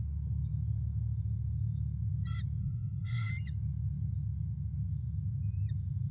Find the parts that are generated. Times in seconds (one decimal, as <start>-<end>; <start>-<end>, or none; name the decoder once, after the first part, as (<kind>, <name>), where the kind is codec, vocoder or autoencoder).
2.6-3.3 (codec, SNAC)